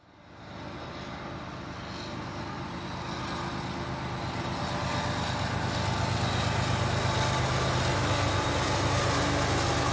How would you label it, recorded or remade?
recorded